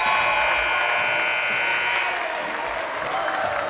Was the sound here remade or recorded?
recorded